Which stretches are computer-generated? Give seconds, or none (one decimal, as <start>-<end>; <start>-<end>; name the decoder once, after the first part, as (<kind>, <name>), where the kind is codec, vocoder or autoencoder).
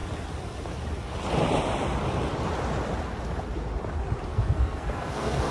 4.3-5.5 (codec, SNAC)